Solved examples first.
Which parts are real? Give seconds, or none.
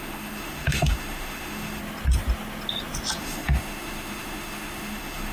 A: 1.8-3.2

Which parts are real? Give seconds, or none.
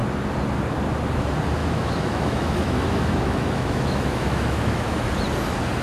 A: 0.0-1.6; 5.1-5.8